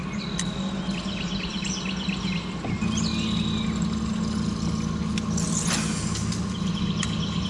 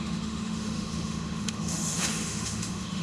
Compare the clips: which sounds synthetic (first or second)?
second